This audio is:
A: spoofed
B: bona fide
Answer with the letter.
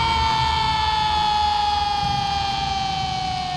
B